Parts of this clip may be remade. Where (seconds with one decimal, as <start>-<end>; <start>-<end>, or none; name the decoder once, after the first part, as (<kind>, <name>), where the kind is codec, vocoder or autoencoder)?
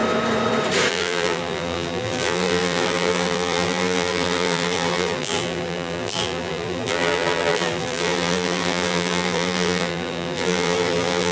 0.9-11.3 (vocoder, BigVGAN v2)